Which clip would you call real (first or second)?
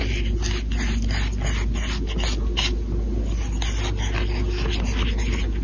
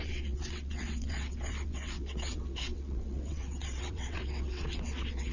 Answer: first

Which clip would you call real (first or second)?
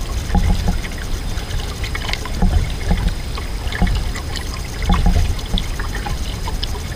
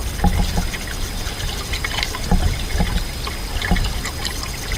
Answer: second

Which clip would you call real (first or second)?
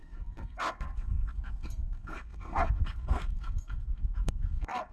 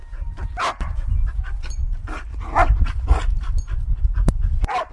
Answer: second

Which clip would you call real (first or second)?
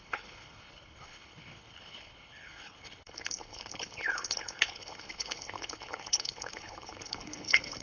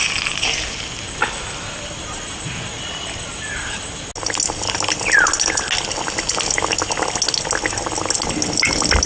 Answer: second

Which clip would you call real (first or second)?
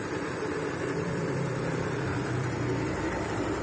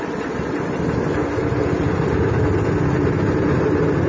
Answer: second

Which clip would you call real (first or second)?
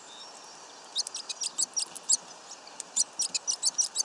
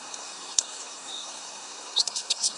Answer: first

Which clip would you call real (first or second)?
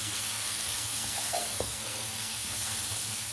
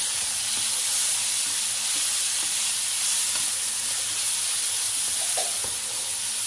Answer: second